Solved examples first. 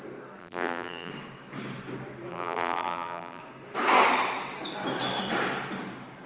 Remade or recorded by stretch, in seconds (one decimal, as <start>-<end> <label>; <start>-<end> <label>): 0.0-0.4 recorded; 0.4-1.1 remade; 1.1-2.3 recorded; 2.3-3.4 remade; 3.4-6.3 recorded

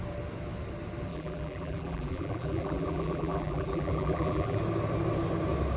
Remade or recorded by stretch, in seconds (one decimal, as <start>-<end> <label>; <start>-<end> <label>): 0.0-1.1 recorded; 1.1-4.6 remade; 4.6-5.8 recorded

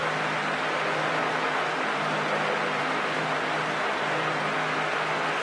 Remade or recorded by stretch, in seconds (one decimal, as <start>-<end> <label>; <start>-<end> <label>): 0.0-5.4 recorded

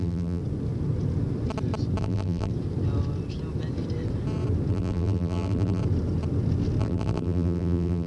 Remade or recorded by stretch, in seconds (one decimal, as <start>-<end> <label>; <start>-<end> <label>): 0.0-0.4 remade; 0.4-2.0 recorded; 2.0-2.5 remade; 2.5-4.7 recorded; 4.7-5.8 remade; 5.8-6.8 recorded; 6.8-8.1 remade

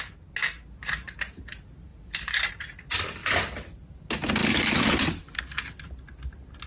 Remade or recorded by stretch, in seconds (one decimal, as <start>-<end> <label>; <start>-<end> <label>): 0.0-1.9 recorded; 1.9-2.5 remade; 2.5-3.2 recorded; 3.2-3.9 remade; 3.9-4.4 recorded; 4.4-5.4 remade; 5.4-6.7 recorded

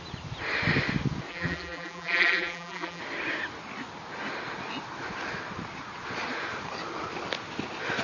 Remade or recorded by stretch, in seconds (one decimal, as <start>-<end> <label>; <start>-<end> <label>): 0.0-1.3 recorded; 1.3-3.0 remade; 3.0-8.0 recorded

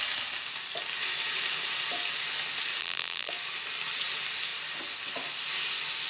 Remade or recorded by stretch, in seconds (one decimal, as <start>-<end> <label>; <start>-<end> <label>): 0.0-2.8 recorded; 2.8-3.3 remade; 3.3-6.1 recorded